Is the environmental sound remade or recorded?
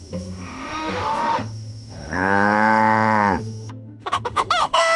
remade